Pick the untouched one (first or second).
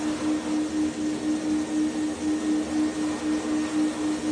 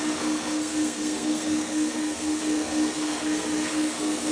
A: first